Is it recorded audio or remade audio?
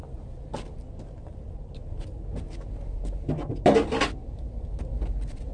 recorded